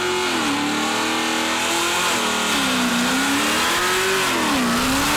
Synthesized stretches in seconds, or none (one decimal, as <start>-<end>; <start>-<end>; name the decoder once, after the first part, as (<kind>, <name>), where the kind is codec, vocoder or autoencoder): none